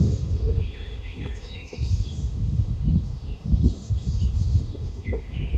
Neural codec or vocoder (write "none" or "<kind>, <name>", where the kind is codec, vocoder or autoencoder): autoencoder, DAC-VAE